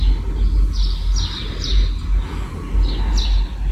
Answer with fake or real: real